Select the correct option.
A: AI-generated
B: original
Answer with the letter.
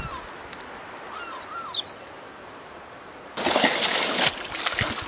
B